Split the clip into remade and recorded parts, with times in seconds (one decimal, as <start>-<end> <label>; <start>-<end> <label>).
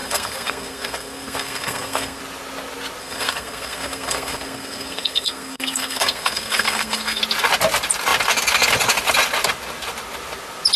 0.0-2.2 remade; 2.2-3.0 recorded; 3.0-7.2 remade; 7.2-10.8 recorded